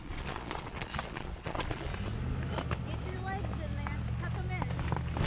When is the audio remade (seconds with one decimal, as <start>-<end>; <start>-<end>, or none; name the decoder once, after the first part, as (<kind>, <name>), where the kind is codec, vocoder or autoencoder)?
0.0-1.9 (vocoder, Vocos)